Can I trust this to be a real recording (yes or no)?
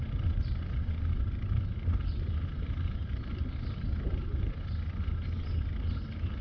yes